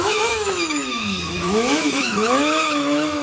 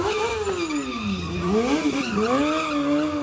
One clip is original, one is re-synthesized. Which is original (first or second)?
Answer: second